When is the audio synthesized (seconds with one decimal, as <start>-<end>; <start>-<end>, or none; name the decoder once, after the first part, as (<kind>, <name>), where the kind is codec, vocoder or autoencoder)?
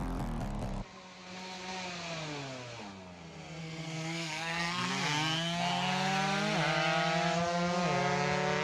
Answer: 3.6-4.9 (codec, SNAC)